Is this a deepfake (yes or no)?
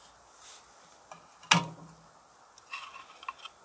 no